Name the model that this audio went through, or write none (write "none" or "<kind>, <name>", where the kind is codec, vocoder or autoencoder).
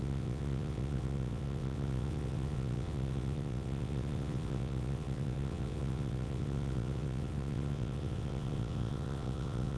vocoder, WaveNeXt